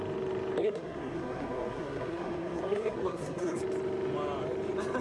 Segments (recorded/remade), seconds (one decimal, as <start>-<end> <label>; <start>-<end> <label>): 0.0-0.6 recorded; 0.6-3.6 remade; 3.6-5.0 recorded